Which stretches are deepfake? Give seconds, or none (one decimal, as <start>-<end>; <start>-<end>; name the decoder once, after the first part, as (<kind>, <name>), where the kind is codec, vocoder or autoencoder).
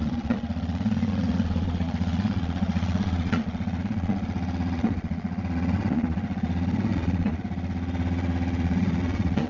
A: 0.0-9.5 (vocoder, Vocos)